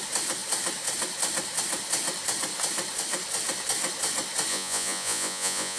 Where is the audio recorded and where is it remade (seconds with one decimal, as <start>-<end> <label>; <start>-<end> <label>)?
0.0-4.5 recorded; 4.5-5.8 remade